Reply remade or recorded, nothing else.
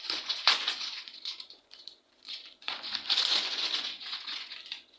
remade